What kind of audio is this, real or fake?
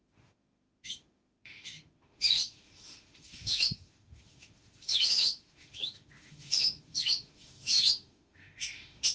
fake